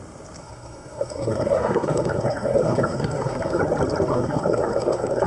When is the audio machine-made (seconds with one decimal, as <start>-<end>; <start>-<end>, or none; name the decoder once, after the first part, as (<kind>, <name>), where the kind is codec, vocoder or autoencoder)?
0.4-3.6 (codec, SNAC); 4.1-5.3